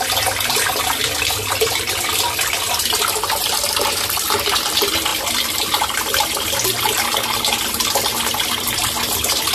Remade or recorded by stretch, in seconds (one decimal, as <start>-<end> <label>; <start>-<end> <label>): 0.0-9.5 recorded